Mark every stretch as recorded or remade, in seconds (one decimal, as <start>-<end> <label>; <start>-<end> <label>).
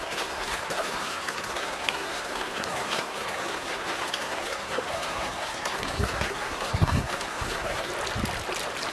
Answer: 0.0-7.9 remade; 7.9-8.9 recorded